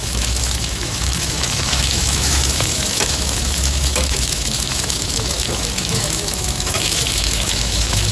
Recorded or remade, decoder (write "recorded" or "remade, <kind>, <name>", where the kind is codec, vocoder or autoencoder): remade, autoencoder, DAC-VAE